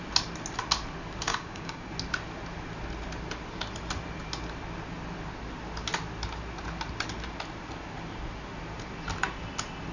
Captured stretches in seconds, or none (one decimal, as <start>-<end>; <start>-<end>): 0.0-1.3; 1.9-9.9